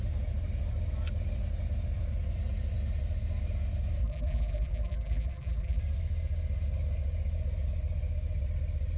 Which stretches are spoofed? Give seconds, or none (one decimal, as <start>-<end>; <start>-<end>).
4.0-5.8